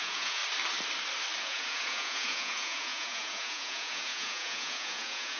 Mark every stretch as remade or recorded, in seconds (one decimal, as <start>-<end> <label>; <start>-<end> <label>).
0.0-0.4 remade; 0.4-1.4 recorded; 1.4-5.4 remade